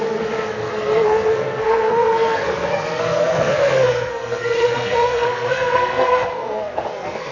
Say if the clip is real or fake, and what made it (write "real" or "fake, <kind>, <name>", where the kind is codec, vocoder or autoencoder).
fake, codec, SNAC